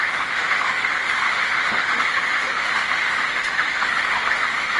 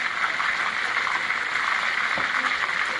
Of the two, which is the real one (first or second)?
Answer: second